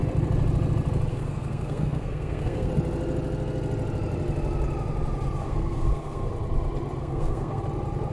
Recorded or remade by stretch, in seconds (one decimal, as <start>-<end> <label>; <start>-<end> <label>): 0.0-1.1 recorded; 1.1-2.7 remade; 2.7-5.4 recorded; 5.4-6.3 remade; 6.3-7.0 recorded; 7.0-7.6 remade; 7.6-8.1 recorded